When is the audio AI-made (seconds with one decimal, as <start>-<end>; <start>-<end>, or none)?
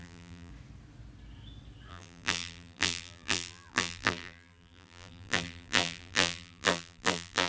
0.0-0.5; 1.9-7.5